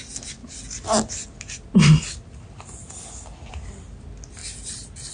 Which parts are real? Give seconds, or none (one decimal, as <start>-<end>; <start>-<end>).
0.0-5.1